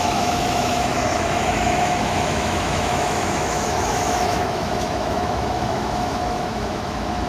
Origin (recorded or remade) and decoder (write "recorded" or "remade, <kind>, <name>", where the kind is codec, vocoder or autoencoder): remade, autoencoder, DAC-VAE